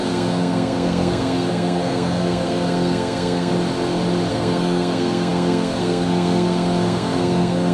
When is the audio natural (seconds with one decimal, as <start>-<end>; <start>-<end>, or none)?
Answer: 3.5-4.3